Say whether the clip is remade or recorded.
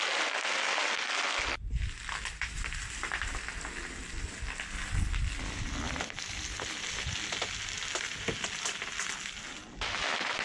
recorded